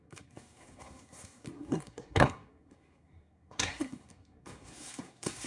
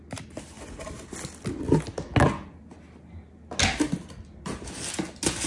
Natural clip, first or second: second